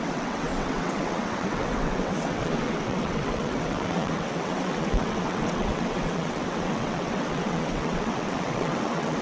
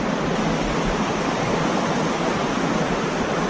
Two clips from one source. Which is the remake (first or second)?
first